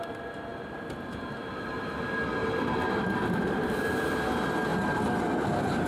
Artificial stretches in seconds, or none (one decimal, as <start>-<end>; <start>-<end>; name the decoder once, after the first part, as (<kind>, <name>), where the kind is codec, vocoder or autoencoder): 2.4-4.1 (vocoder, BigVGAN v2)